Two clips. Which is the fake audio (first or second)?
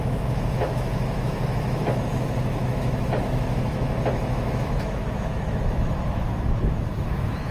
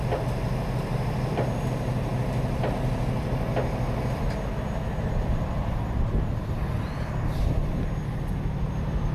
first